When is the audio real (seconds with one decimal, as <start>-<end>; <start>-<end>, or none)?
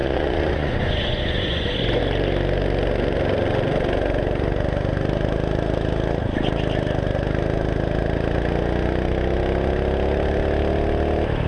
2.0-11.5